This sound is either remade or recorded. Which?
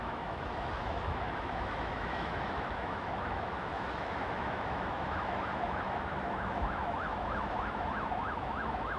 remade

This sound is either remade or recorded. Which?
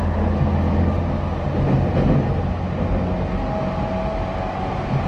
recorded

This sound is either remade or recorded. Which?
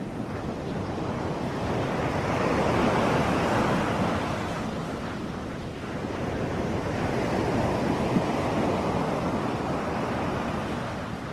recorded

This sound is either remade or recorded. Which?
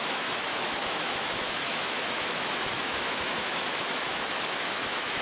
remade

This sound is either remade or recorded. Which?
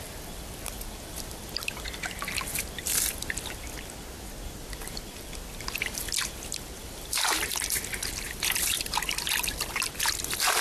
recorded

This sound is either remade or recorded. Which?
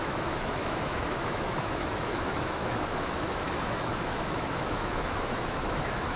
remade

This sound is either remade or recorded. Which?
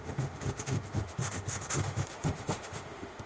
remade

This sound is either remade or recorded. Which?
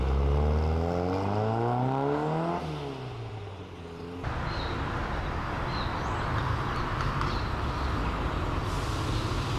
recorded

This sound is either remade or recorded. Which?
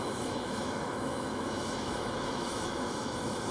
remade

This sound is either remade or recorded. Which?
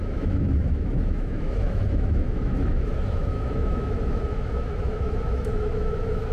remade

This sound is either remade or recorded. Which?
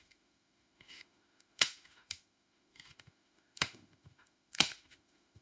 remade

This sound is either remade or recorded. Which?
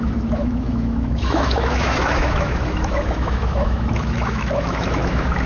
remade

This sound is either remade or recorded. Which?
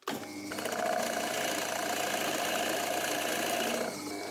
recorded